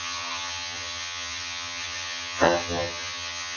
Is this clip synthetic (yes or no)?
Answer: yes